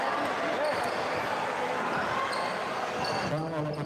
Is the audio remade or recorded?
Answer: recorded